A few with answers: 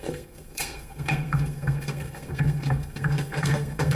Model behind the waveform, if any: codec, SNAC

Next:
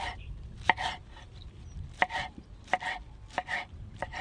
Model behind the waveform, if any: none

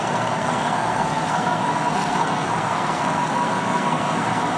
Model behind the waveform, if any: codec, SNAC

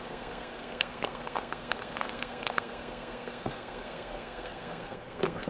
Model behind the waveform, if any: codec, SNAC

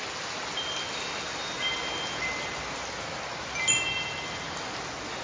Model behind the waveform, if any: none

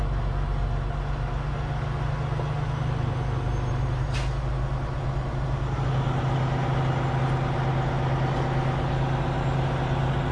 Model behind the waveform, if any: none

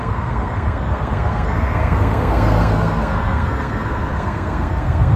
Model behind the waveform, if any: codec, SNAC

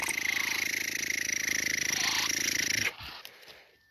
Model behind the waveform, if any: none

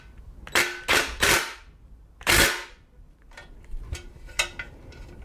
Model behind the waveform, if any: none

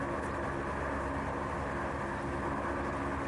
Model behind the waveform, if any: none